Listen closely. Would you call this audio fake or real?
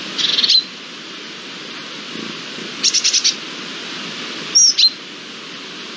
real